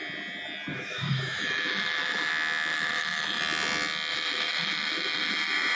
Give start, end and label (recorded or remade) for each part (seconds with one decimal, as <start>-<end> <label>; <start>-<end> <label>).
0.0-0.7 recorded; 0.7-2.3 remade; 2.3-2.7 recorded; 2.7-3.4 remade; 3.4-4.1 recorded; 4.1-5.8 remade